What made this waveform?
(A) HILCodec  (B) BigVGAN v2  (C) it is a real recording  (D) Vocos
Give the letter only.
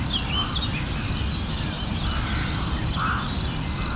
C